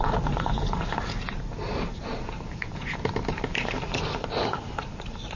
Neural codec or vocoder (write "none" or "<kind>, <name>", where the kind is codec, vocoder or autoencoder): vocoder, BigVGAN v2